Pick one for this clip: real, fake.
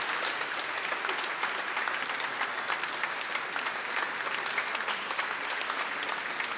real